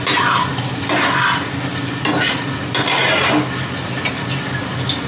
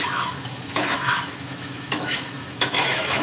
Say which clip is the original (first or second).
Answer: first